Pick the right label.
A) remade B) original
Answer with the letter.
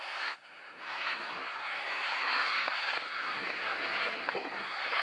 A